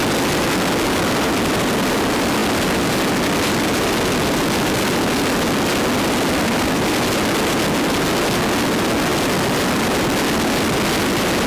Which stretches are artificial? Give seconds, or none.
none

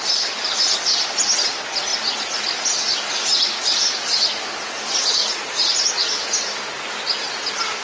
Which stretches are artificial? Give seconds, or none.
5.2-6.2 (vocoder, Vocos)